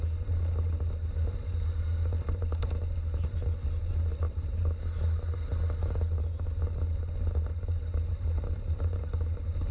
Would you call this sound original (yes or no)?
yes